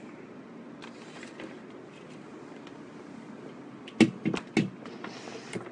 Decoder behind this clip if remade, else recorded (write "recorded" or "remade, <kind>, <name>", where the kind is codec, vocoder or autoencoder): recorded